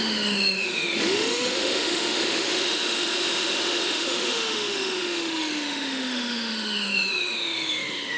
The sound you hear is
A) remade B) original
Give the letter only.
A